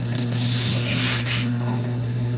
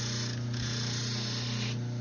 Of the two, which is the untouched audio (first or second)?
second